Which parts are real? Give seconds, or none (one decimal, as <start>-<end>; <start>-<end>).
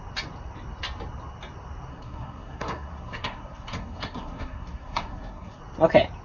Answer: 0.0-1.9; 5.6-6.2